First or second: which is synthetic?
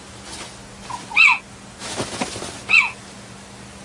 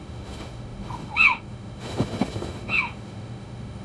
second